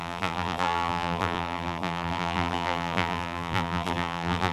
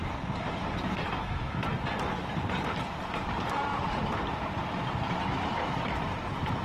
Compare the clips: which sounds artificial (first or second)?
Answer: first